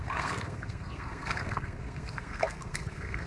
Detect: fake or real fake